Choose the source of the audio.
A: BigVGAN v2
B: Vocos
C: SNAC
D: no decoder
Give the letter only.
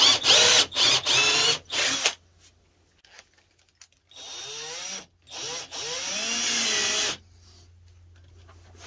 D